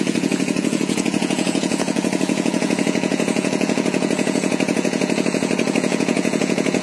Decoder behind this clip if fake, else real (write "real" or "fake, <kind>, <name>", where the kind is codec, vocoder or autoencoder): fake, vocoder, Vocos